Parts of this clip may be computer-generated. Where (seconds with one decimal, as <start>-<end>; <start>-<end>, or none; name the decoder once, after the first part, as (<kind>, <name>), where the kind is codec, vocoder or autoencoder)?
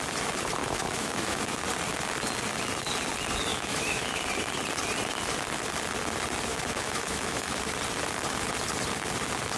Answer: 0.6-1.6 (autoencoder, DAC-VAE); 3.5-4.2; 6.5-7.6